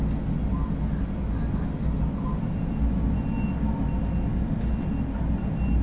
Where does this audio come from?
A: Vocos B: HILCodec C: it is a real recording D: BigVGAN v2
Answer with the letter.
C